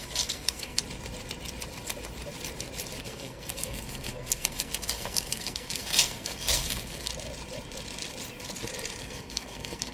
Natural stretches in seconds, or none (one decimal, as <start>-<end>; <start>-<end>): 0.8-3.0; 7.1-9.0